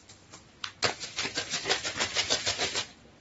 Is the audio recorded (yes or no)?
yes